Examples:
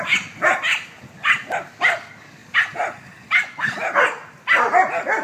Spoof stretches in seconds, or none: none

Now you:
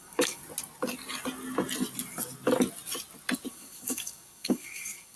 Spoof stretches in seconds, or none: 0.0-0.4 (codec, DAC); 3.5-5.2

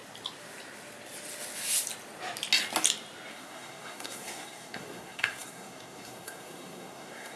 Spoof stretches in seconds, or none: 3.3-7.4 (codec, SNAC)

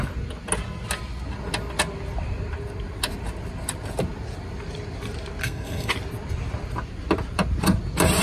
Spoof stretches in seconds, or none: 5.4-5.9 (codec, SNAC)

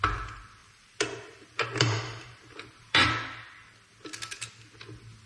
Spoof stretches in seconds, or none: 0.6-3.1 (vocoder, BigVGAN v2)

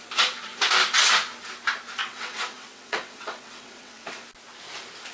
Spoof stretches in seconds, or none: 2.0-4.2 (vocoder, WaveNeXt)